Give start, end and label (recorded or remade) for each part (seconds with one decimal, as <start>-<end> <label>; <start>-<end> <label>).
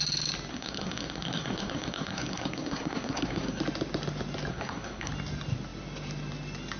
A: 0.0-0.5 recorded; 0.5-3.6 remade; 3.6-4.5 recorded; 4.5-5.1 remade; 5.1-6.8 recorded